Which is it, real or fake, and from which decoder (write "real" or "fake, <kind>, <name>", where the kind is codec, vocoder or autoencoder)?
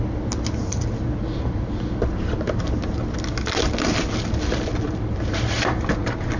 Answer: real